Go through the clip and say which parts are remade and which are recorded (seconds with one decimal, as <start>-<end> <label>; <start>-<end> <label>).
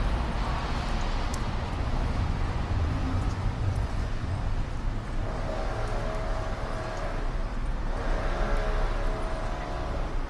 0.0-1.3 recorded; 1.3-4.4 remade; 4.4-10.3 recorded